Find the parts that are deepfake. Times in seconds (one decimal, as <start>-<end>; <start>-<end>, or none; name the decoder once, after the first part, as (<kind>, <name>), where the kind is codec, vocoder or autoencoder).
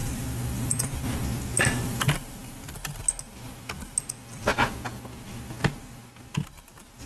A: none